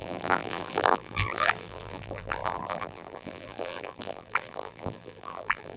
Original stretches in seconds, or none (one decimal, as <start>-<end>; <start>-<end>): none